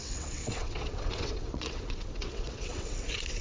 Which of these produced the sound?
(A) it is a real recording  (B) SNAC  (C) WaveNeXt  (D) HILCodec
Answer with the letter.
C